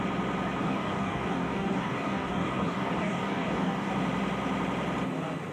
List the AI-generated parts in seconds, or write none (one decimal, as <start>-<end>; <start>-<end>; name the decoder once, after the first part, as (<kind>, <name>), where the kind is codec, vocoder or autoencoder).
0.6-3.9 (codec, DAC)

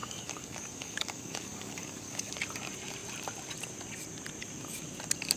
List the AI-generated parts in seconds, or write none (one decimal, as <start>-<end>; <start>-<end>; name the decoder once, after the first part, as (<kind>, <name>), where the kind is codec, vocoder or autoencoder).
0.0-2.3 (codec, DAC)

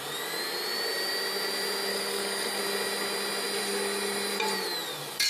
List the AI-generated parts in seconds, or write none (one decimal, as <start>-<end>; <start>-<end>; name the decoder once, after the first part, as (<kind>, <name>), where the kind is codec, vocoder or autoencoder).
1.9-2.6 (codec, DAC)

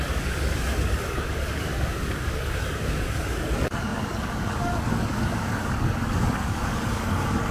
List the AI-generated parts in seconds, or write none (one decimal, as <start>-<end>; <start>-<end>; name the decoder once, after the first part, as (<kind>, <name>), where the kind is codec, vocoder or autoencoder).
0.0-7.5 (codec, DAC)